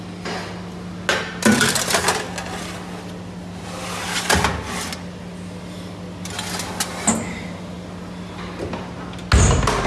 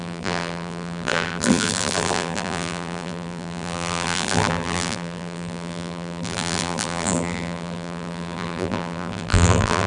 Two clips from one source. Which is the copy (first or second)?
second